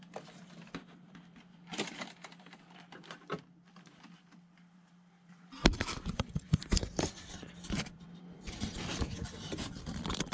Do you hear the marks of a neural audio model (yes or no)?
yes